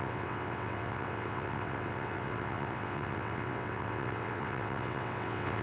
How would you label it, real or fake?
fake